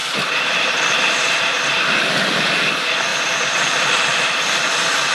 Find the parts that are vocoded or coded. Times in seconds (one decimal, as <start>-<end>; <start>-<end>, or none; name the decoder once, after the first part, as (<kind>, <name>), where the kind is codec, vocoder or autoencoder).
0.0-1.6 (vocoder, BigVGAN v2); 3.1-4.4

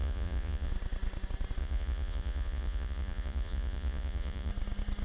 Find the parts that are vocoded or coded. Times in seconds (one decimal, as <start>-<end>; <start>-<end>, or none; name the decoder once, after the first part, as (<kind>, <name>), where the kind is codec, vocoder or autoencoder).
0.0-0.7 (vocoder, Vocos); 1.6-4.5

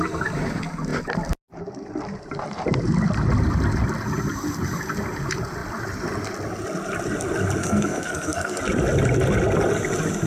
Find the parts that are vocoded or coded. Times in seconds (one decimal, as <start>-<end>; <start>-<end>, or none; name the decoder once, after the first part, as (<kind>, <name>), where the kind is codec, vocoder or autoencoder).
7.6-8.6 (codec, SNAC)

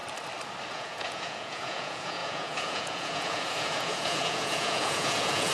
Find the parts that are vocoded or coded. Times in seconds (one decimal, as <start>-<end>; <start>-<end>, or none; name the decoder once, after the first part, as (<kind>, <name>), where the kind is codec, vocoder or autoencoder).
0.7-5.5 (vocoder, Vocos)

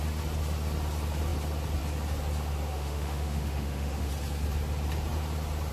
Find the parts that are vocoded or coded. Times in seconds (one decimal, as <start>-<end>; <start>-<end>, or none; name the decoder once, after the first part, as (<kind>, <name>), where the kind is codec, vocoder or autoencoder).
2.7-4.1 (autoencoder, DAC-VAE)